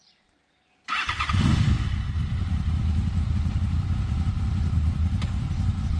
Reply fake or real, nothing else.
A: fake